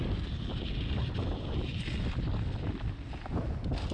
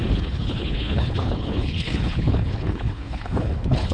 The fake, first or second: second